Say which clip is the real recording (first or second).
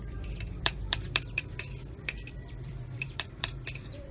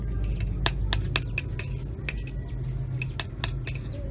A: second